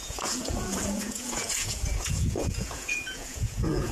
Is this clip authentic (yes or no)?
no